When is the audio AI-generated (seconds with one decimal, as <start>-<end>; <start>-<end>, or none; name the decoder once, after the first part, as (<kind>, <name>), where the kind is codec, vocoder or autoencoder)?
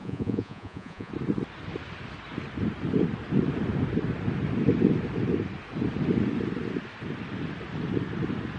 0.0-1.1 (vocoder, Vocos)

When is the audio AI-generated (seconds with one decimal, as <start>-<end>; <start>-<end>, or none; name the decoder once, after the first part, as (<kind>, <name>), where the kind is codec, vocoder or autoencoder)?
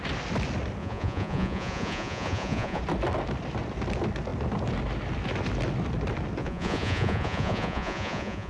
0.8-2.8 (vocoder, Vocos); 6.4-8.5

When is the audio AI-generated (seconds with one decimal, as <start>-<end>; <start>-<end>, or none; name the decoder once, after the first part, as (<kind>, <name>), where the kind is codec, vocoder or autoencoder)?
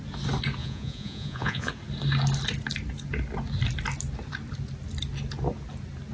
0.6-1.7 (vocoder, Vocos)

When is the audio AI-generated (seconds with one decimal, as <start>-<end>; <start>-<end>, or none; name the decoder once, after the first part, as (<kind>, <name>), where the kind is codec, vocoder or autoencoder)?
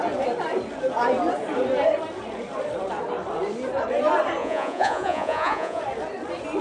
4.4-5.8 (vocoder, Vocos)